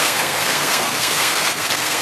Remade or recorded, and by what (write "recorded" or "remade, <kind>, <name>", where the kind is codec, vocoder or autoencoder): remade, codec, SNAC